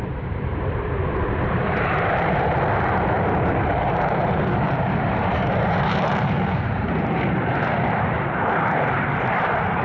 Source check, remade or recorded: remade